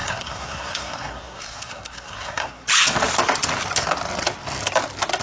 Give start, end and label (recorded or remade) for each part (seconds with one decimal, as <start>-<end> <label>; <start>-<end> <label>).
0.0-2.7 remade; 2.7-5.2 recorded